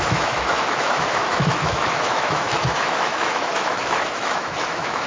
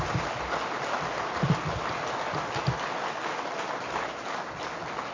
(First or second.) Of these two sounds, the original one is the second